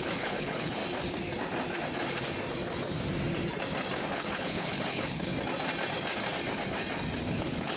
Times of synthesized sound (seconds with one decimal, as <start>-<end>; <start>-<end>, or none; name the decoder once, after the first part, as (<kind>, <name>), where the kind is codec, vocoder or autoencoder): 0.0-0.8 (codec, HILCodec); 4.1-5.3; 7.3-7.8